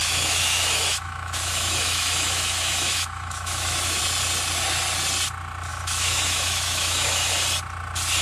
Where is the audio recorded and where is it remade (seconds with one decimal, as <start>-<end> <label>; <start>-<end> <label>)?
0.0-4.0 remade; 4.0-5.7 recorded; 5.7-7.3 remade; 7.3-8.2 recorded